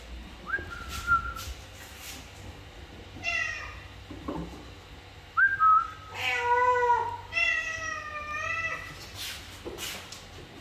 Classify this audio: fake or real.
real